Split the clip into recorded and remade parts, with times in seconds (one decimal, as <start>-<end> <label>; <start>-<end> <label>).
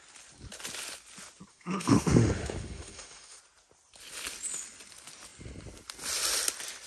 0.0-1.5 recorded; 1.5-3.4 remade; 3.4-6.9 recorded